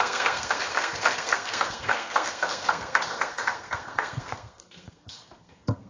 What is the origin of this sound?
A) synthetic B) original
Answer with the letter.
A